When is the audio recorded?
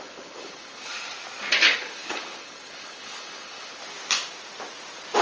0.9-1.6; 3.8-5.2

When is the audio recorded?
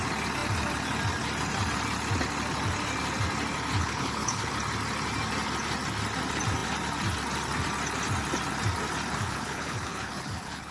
0.0-3.8; 4.5-9.2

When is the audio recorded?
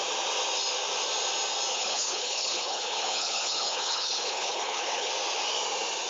0.0-1.7; 5.1-6.1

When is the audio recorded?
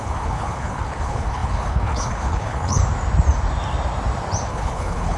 2.8-4.5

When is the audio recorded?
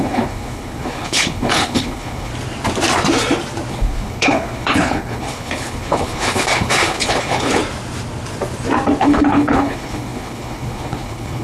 2.3-3.7; 7.6-9.0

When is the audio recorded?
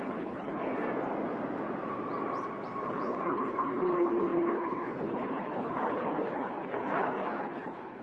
0.7-2.8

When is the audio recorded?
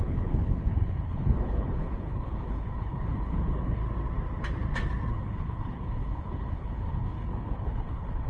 3.8-5.1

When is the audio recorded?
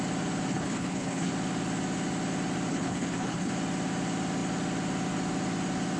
0.0-0.5; 1.3-2.7; 3.5-6.0